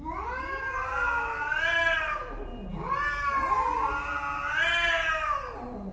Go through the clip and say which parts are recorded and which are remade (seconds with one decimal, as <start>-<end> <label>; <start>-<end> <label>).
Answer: 0.0-5.9 recorded